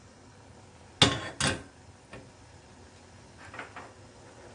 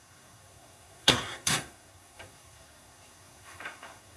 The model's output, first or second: second